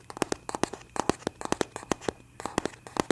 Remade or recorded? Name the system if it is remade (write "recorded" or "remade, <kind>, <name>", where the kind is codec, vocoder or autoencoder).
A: recorded